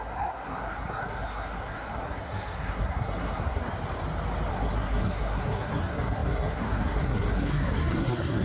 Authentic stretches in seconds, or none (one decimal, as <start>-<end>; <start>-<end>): 3.6-4.5